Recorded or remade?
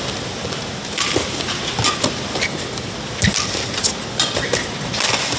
recorded